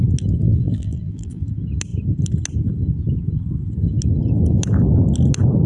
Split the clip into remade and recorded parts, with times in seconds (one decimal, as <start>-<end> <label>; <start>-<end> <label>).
0.0-0.4 recorded; 0.4-1.5 remade; 1.5-5.7 recorded